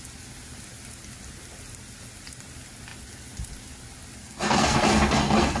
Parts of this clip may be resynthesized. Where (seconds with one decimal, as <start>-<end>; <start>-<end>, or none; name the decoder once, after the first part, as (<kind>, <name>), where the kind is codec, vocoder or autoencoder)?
4.2-5.6 (codec, SNAC)